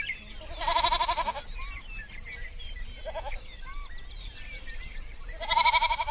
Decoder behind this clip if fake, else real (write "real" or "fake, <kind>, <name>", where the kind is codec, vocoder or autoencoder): fake, vocoder, BigVGAN v2